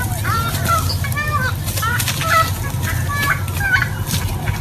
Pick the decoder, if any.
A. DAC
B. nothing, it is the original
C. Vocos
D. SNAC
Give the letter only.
B